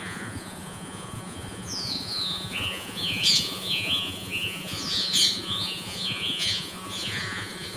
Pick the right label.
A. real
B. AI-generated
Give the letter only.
B